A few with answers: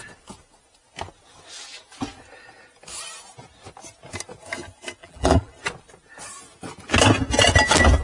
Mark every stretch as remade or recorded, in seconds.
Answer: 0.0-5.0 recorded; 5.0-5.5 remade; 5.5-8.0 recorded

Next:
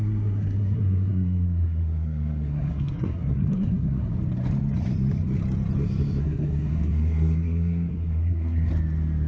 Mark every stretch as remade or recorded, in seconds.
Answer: 0.0-4.1 remade; 4.1-6.2 recorded; 6.2-8.7 remade; 8.7-9.3 recorded

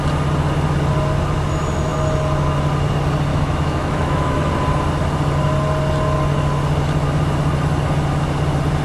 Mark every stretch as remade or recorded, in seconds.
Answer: 0.0-3.3 recorded; 3.3-4.5 remade; 4.5-8.8 recorded